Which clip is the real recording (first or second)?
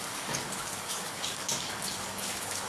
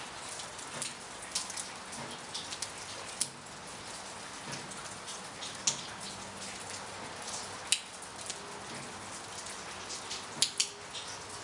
second